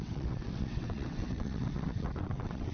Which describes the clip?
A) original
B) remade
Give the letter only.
B